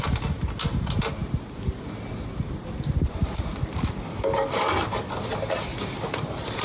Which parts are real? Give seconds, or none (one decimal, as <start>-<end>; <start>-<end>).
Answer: 0.0-6.6